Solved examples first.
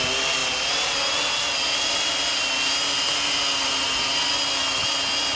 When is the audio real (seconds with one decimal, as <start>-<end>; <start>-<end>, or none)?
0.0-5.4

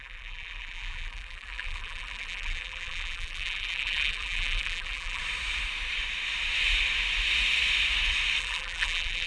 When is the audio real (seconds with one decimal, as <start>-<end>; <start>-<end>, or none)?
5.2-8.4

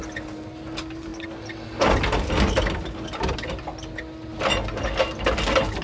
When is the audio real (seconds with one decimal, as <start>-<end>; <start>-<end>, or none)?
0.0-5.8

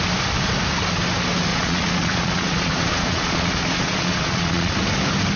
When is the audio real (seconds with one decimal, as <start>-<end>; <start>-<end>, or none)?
0.0-1.5; 4.7-5.4

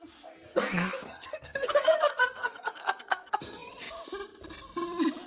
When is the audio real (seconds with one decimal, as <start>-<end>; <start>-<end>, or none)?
0.0-0.5; 3.7-5.3